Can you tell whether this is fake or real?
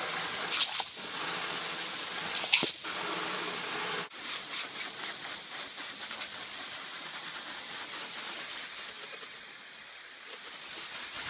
real